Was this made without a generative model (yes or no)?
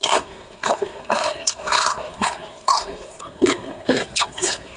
no